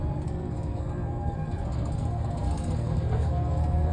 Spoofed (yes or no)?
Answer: yes